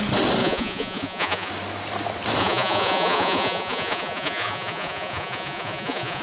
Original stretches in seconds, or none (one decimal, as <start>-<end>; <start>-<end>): 0.0-0.4; 1.5-2.4